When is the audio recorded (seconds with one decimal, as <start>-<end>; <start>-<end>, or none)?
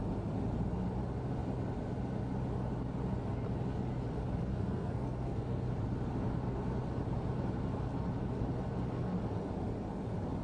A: 0.0-4.5; 5.7-10.4